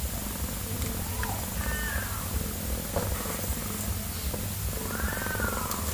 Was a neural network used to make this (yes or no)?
no